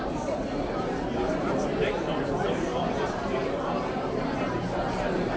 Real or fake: fake